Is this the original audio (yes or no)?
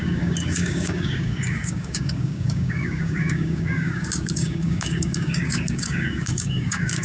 no